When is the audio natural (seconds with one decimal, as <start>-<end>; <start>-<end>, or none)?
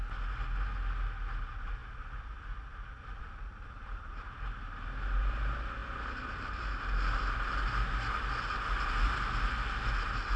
0.0-10.4